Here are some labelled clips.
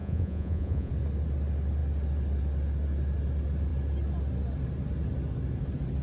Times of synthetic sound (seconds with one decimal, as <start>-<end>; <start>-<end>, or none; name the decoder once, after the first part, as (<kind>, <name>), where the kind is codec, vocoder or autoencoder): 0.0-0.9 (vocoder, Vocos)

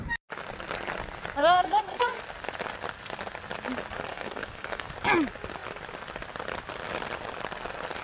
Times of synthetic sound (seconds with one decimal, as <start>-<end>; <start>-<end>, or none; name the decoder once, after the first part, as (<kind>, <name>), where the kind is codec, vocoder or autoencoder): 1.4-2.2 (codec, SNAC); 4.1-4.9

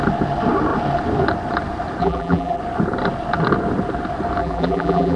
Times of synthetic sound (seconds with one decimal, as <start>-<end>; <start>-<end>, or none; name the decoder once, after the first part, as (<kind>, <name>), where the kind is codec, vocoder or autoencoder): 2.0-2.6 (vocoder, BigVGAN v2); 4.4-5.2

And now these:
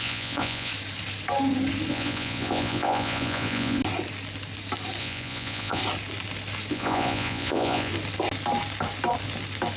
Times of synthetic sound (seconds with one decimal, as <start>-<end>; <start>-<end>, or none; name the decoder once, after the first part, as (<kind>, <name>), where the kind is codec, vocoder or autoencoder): 0.0-0.7 (vocoder, Vocos); 1.9-3.8; 5.0-5.8; 6.7-7.9

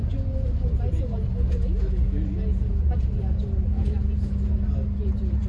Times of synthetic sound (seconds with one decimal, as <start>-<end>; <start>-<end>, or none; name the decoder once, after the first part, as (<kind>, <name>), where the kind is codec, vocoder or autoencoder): 3.3-5.5 (vocoder, BigVGAN v2)

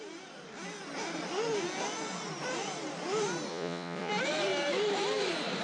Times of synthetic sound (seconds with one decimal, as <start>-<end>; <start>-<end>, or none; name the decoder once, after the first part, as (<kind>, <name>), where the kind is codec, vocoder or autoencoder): 3.5-4.1 (vocoder, Vocos)